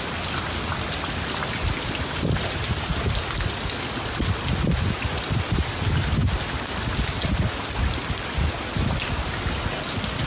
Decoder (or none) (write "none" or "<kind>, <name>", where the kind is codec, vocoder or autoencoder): none